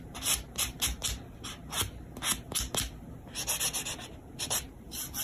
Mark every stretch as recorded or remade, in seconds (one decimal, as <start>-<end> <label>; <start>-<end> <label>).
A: 0.0-1.0 remade; 1.0-4.1 recorded; 4.1-5.2 remade